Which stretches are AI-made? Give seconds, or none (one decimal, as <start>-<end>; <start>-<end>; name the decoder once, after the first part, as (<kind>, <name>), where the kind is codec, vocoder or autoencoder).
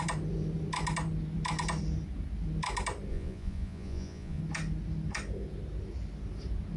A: 3.1-4.4 (vocoder, Vocos)